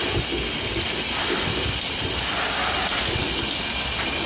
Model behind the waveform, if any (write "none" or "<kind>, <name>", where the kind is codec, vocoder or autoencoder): none